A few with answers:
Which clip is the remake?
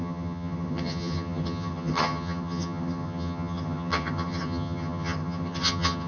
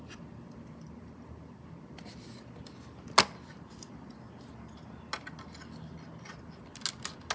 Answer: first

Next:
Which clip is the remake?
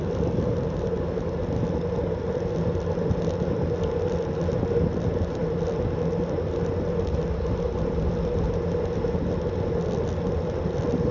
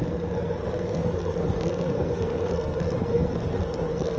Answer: second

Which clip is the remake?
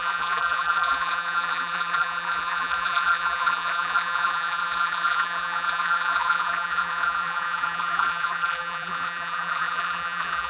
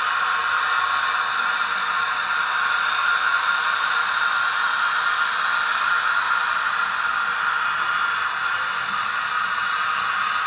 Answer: first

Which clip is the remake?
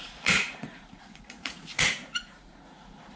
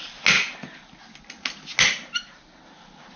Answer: first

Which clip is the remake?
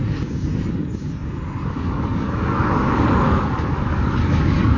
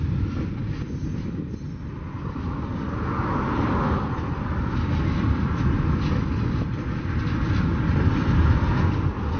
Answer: first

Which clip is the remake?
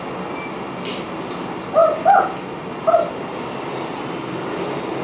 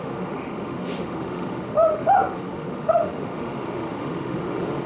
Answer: second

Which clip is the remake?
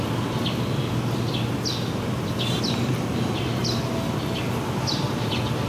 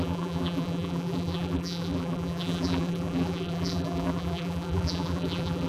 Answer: second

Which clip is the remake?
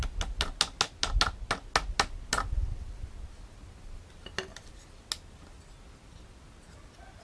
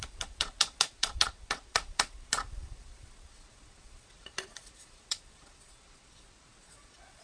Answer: second